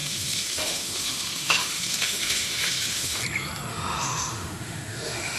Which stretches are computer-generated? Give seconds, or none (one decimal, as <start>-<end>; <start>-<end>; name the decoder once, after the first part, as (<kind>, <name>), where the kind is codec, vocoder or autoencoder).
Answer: 0.0-3.2 (autoencoder, DAC-VAE); 3.7-5.4